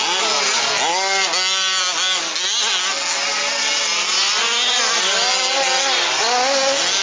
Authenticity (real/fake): real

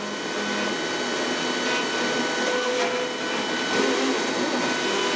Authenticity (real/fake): real